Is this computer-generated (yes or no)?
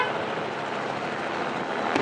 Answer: no